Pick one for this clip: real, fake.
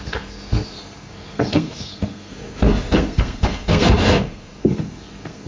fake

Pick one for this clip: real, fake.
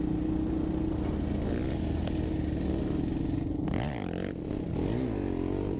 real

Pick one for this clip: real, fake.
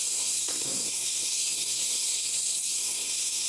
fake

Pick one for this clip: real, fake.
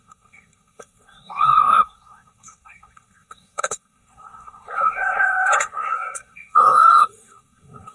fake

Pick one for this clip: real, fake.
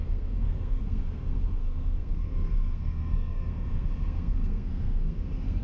fake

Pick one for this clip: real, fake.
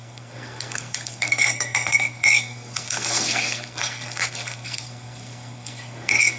fake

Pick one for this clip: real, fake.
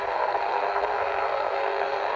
fake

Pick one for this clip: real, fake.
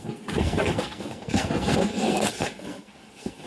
fake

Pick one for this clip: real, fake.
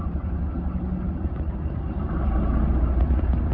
real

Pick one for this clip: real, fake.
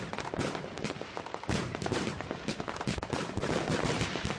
real